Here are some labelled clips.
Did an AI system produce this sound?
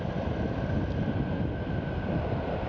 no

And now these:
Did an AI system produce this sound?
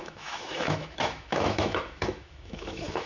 yes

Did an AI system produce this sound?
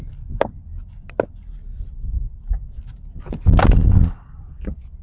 no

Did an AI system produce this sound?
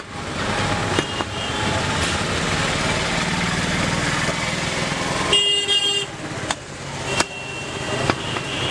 no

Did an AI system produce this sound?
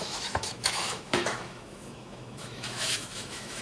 yes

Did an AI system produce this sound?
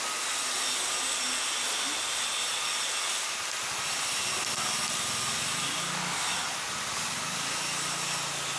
no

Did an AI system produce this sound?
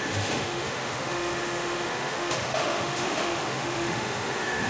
yes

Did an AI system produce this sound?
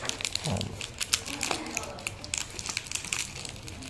no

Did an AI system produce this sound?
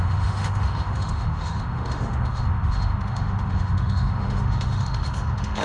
yes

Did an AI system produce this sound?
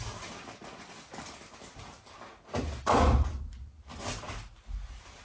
no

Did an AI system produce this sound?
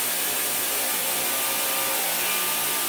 no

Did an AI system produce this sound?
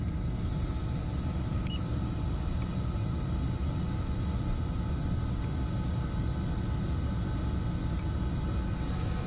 no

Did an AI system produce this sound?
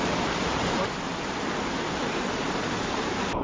no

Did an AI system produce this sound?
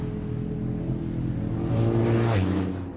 no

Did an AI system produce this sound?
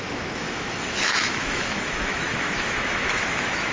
yes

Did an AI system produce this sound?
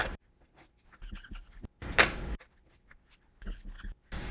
no